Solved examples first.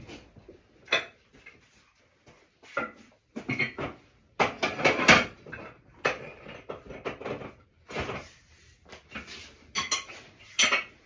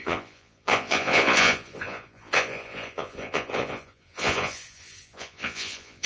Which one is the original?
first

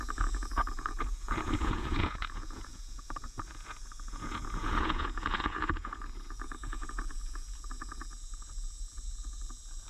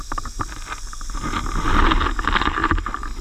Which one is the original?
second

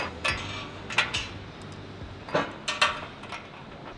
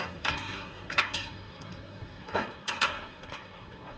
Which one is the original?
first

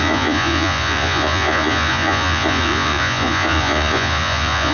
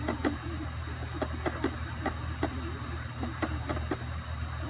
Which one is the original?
second